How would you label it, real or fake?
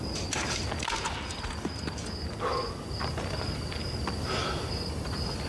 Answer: real